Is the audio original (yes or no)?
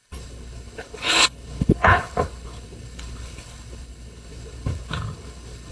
no